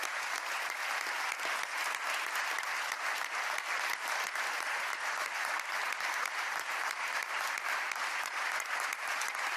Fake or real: real